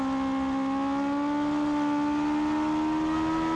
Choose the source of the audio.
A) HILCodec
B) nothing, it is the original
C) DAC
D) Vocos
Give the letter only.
B